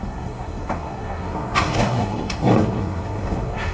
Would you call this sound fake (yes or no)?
yes